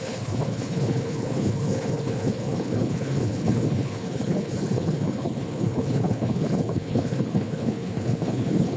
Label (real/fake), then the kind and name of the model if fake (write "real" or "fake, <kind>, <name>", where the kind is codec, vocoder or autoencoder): fake, codec, HILCodec